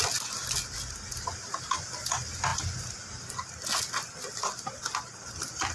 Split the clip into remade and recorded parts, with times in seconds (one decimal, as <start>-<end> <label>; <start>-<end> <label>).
0.0-5.7 recorded